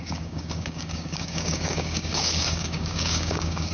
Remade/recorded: remade